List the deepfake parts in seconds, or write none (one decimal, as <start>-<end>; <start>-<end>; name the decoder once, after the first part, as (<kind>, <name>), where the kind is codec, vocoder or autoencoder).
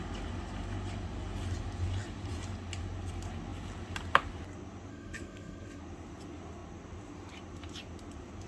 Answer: 4.9-5.8 (codec, SNAC)